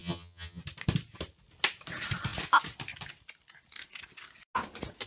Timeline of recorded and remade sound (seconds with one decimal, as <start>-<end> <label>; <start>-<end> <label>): 0.0-0.6 remade; 0.6-5.1 recorded